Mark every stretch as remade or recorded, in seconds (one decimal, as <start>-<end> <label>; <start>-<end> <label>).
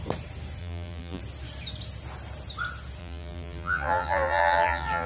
0.0-0.6 recorded; 0.6-1.2 remade; 1.2-3.0 recorded; 3.0-5.1 remade